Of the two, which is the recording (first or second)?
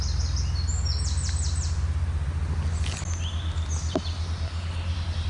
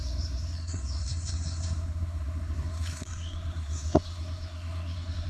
first